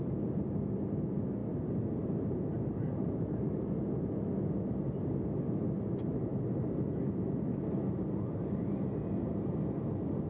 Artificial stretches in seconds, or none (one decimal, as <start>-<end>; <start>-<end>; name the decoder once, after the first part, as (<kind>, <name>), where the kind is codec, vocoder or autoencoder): none